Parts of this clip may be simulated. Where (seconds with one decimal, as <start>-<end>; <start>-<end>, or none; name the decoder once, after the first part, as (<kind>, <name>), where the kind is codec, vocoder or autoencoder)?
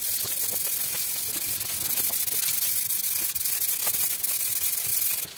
none